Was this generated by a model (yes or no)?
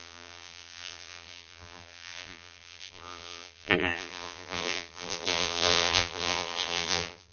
yes